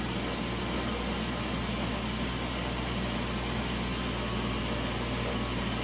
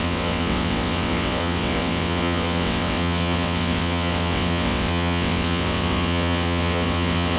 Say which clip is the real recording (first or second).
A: first